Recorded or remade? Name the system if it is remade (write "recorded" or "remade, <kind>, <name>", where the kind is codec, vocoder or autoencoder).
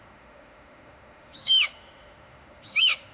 remade, autoencoder, DAC-VAE